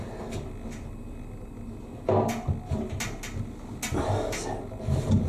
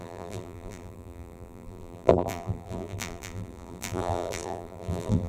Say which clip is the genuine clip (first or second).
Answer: first